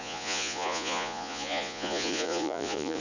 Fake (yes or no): yes